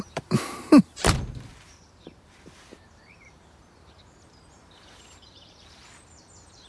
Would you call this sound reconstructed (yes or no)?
yes